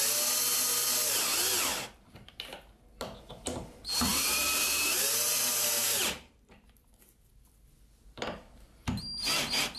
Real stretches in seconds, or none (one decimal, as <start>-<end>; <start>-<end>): 0.0-4.1; 6.3-9.8